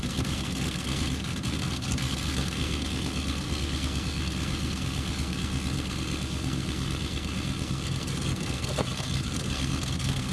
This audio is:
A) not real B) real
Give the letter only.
A